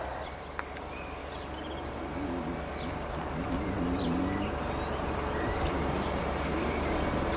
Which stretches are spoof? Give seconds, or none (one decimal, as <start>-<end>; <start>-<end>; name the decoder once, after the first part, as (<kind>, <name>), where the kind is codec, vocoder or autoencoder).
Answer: 0.0-1.2 (vocoder, BigVGAN v2); 5.1-7.4